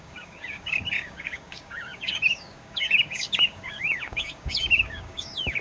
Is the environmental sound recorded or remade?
remade